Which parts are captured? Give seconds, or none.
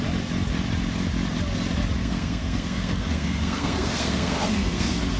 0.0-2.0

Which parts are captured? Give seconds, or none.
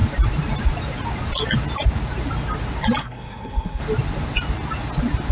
0.0-3.0; 3.8-5.3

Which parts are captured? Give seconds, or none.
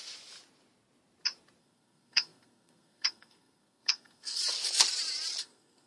0.0-1.6; 4.4-5.4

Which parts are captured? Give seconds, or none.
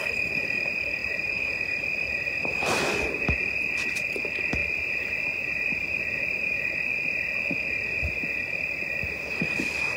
0.0-1.0; 2.8-4.6; 6.2-10.0